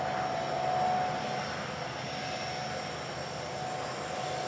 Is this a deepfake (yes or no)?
no